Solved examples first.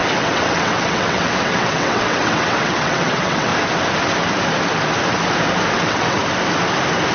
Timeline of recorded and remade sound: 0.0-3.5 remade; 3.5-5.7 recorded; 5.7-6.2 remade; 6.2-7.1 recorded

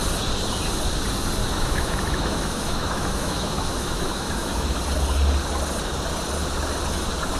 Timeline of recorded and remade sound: 0.0-1.4 recorded; 1.4-4.8 remade; 4.8-7.4 recorded

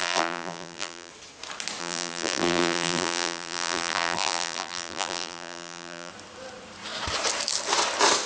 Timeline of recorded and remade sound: 0.0-1.1 remade; 1.1-1.8 recorded; 1.8-6.1 remade; 6.1-8.3 recorded